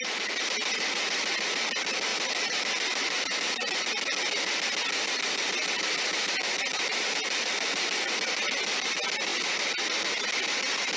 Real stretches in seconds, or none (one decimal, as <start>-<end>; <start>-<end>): 0.0-11.0